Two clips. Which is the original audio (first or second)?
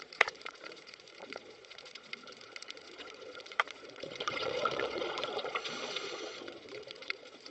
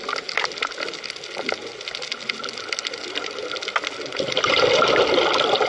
second